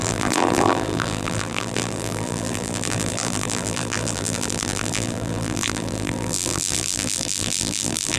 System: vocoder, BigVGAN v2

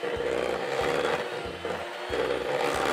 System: none